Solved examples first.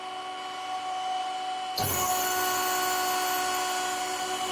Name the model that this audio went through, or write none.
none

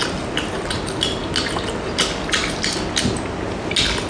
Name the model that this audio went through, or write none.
none